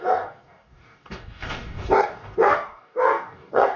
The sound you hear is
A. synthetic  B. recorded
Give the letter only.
A